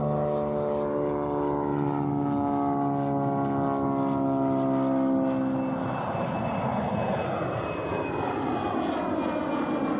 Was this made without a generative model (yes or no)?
yes